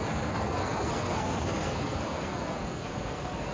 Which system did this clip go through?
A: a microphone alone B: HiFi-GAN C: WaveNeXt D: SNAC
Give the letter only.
D